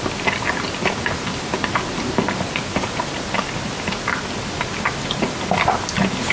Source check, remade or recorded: recorded